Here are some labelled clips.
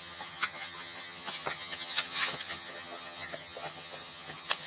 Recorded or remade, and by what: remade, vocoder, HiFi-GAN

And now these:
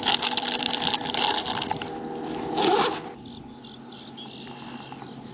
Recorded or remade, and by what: recorded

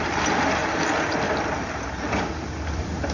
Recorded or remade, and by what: recorded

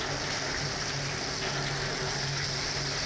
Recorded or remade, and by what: recorded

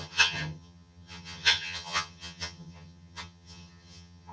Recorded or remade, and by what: remade, vocoder, HiFi-GAN